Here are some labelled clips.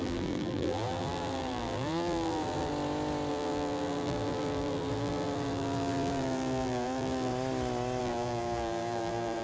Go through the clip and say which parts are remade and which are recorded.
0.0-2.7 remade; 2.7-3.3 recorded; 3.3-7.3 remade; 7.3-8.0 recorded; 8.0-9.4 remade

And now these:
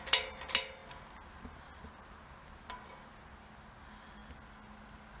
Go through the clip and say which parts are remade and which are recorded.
0.0-5.2 recorded